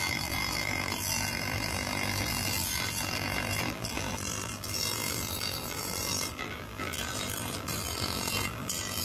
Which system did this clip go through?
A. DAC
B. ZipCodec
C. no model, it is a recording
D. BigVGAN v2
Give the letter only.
D